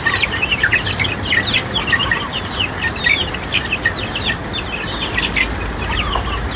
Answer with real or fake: real